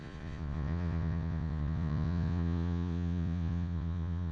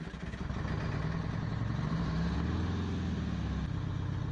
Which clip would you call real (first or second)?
second